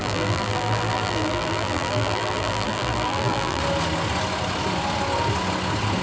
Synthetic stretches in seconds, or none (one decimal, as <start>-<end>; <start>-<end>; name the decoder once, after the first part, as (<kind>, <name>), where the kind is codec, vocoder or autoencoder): 0.0-3.6 (vocoder, BigVGAN v2)